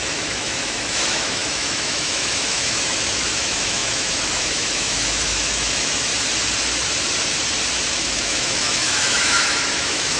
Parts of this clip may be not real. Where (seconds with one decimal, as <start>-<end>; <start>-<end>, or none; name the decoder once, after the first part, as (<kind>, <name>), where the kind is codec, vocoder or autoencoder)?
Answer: 0.0-6.1 (autoencoder, DAC-VAE); 7.9-10.2